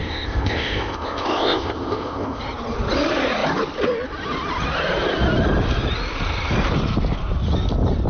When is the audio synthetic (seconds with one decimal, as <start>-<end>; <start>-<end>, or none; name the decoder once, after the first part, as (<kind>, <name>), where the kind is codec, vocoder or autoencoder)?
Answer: 0.0-2.4 (codec, ZipCodec)